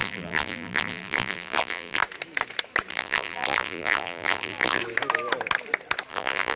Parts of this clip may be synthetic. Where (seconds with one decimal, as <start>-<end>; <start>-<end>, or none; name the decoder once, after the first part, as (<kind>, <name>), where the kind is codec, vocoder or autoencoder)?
0.0-2.0 (vocoder, BigVGAN v2); 2.9-4.8; 6.1-6.6